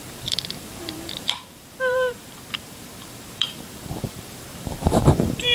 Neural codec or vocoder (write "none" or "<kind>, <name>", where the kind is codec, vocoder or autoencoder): vocoder, BigVGAN v2